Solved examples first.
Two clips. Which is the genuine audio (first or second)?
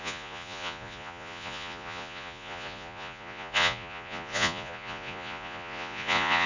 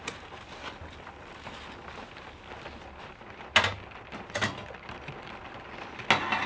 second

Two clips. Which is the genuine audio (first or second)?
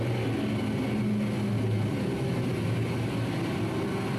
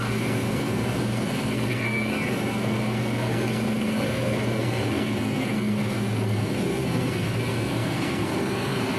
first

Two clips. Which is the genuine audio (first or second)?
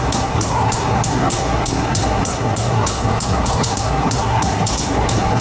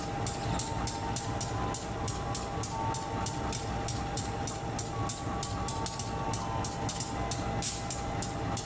second